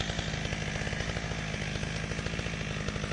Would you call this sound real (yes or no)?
yes